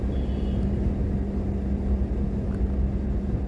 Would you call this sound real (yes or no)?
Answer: yes